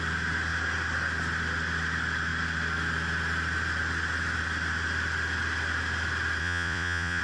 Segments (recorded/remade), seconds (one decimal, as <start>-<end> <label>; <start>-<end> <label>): 0.0-6.4 recorded; 6.4-7.2 remade